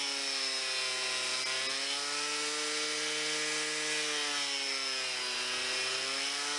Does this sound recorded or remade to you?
recorded